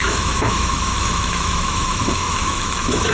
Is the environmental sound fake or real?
fake